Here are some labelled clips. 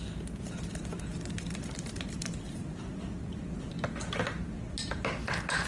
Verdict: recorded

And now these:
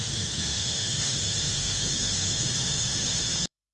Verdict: remade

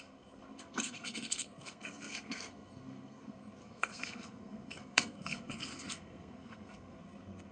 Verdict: remade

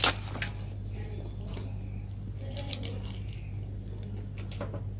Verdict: recorded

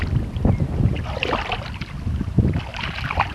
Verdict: recorded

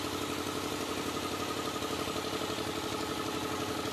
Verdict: recorded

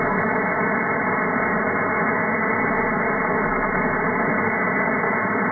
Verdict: recorded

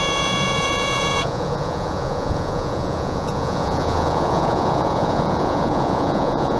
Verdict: remade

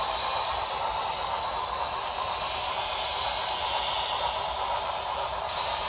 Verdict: remade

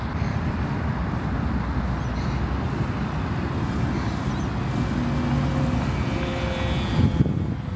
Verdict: recorded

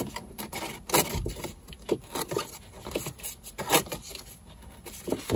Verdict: recorded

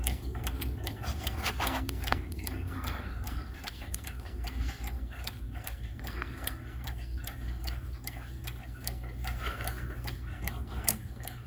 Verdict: remade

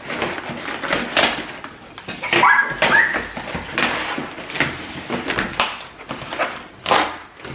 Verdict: recorded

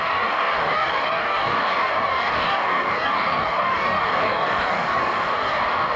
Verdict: remade